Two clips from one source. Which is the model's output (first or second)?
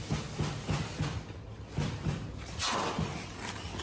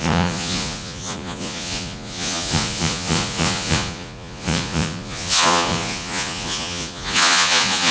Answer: second